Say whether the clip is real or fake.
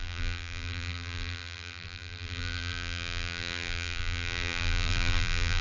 fake